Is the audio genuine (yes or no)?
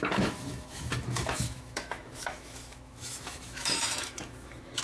no